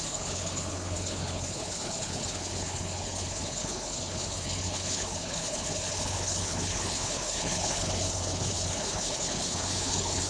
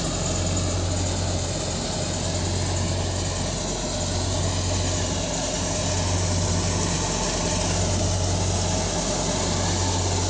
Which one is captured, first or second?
second